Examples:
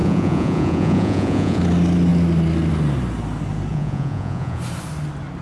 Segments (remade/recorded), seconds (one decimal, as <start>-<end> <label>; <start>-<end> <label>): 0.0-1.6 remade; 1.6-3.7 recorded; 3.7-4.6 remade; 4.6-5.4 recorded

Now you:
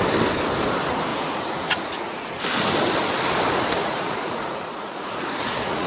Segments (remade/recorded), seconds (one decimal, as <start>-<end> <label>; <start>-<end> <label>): 0.0-1.1 recorded; 1.1-2.4 remade; 2.4-3.8 recorded; 3.8-5.9 remade

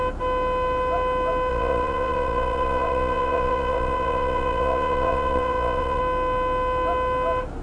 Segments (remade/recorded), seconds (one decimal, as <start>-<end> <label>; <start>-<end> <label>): 0.0-1.5 recorded; 1.5-6.0 remade; 6.0-7.6 recorded

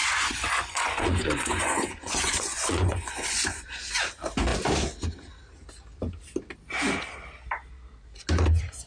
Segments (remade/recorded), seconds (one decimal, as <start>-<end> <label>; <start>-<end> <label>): 0.0-4.0 remade; 4.0-8.9 recorded